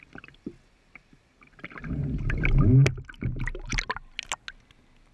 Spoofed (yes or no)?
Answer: no